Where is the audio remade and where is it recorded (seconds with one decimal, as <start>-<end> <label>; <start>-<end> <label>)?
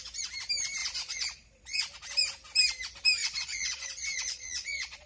0.0-0.8 recorded; 0.8-1.8 remade; 1.8-3.2 recorded; 3.2-5.1 remade